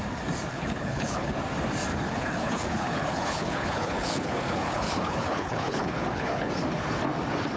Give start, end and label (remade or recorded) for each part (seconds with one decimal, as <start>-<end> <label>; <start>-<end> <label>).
0.0-0.5 recorded; 0.5-1.3 remade; 1.3-1.9 recorded; 1.9-6.5 remade; 6.5-7.6 recorded